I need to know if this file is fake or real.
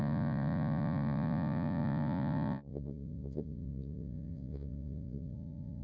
fake